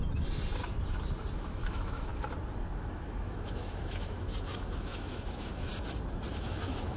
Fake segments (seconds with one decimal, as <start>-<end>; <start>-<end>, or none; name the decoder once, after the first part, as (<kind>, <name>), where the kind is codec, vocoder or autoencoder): 1.3-2.1 (autoencoder, DAC-VAE); 2.8-5.7; 6.3-7.0